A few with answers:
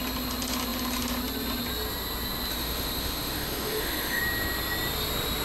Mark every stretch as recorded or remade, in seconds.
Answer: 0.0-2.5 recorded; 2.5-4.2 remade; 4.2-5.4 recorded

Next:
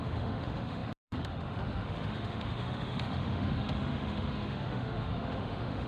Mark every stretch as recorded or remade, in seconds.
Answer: 0.0-5.9 remade